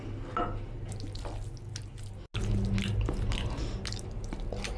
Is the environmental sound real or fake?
real